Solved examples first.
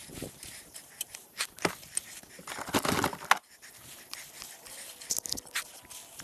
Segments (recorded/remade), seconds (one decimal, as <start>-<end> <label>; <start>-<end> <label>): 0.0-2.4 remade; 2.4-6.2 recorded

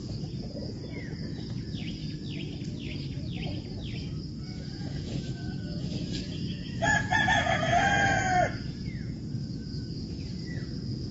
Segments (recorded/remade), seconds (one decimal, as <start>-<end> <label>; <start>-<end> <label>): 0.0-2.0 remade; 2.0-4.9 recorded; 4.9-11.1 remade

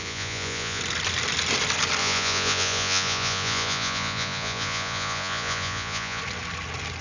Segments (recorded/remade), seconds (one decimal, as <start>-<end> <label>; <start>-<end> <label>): 0.0-0.8 remade; 0.8-2.0 recorded; 2.0-6.2 remade; 6.2-7.0 recorded